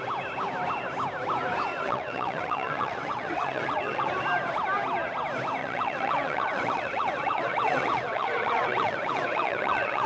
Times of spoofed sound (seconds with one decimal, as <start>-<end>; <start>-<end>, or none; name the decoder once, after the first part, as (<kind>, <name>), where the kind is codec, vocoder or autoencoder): 1.7-4.1 (vocoder, WaveNeXt); 5.6-10.1